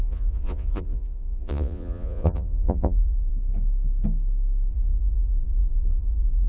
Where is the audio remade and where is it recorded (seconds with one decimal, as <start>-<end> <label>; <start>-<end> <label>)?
0.0-3.3 remade; 3.3-4.7 recorded; 4.7-6.5 remade